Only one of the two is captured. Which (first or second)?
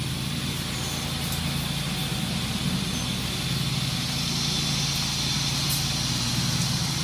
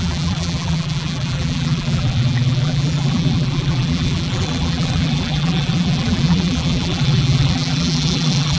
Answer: first